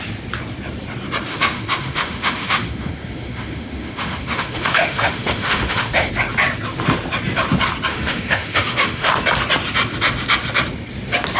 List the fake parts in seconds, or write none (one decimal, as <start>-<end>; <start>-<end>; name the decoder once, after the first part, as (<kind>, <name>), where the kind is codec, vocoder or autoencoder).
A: 1.3-6.1 (autoencoder, DAC-VAE); 7.9-9.1